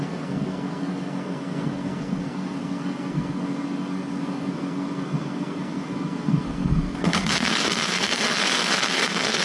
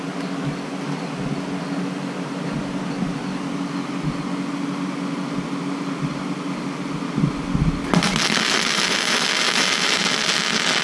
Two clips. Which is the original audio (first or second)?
second